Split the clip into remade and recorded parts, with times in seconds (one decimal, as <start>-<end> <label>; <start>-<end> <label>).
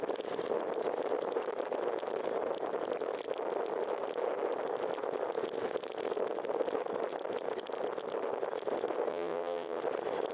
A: 0.0-9.1 recorded; 9.1-9.8 remade; 9.8-10.3 recorded